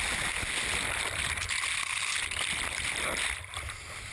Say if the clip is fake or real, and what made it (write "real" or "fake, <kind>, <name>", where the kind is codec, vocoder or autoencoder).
real